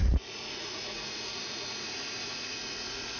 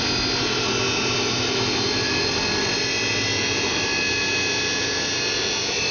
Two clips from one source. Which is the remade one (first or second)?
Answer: first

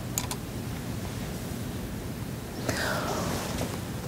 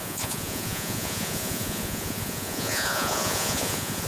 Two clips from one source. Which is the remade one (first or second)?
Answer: second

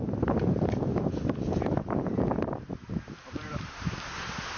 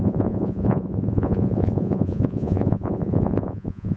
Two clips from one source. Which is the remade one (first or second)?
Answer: second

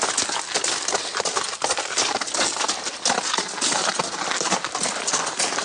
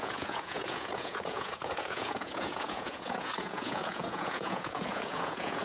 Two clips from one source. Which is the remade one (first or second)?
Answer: second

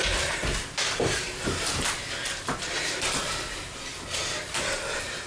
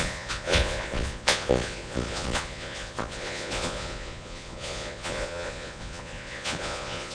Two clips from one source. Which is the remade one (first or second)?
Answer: second